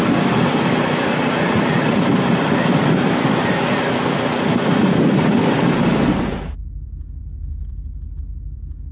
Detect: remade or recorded recorded